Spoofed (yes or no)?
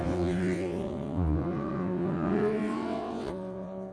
yes